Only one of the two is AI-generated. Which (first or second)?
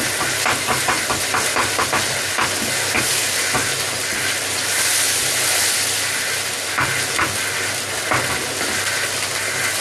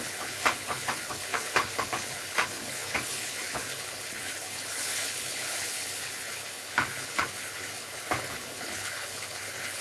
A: second